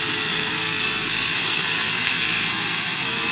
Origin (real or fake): fake